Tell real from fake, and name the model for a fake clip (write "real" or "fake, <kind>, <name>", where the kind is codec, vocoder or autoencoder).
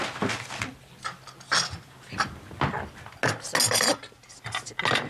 real